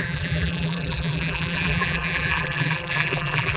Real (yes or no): no